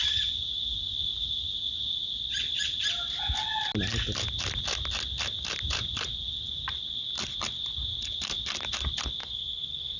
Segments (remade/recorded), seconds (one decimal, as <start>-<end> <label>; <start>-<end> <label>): 0.0-9.2 recorded; 9.2-10.0 remade